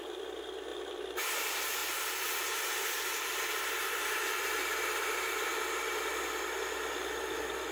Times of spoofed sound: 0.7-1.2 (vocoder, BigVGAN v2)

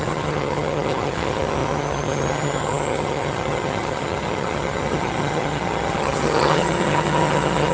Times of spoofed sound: 0.0-7.7 (vocoder, HiFi-GAN)

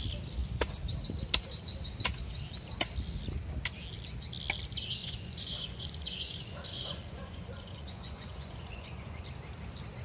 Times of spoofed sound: 5.0-9.2 (vocoder, Vocos)

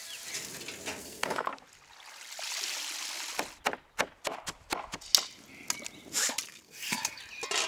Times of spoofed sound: 1.0-1.5 (codec, SNAC); 6.5-7.2